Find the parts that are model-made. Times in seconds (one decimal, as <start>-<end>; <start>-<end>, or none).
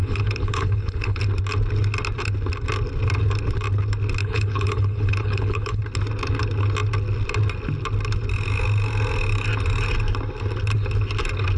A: 0.0-1.2; 4.2-5.8